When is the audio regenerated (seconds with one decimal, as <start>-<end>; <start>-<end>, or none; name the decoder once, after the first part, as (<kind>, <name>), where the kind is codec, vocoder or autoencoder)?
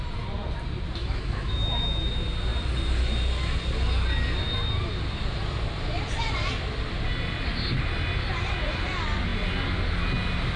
1.0-2.1 (autoencoder, DAC-VAE)